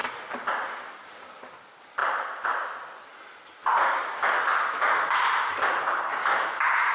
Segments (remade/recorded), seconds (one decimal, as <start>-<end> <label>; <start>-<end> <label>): 0.0-6.9 recorded